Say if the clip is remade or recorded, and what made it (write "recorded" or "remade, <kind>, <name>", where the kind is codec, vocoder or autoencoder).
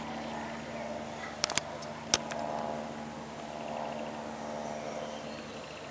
recorded